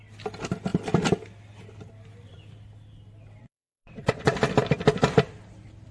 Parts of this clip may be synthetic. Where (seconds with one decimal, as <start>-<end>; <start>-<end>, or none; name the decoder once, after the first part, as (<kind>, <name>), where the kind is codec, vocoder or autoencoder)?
3.4-4.3 (vocoder, WaveNeXt)